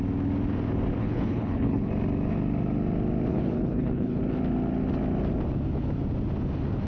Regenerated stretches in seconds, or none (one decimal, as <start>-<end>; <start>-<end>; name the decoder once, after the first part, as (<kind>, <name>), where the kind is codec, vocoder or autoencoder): 1.0-1.9 (codec, HILCodec); 3.3-4.2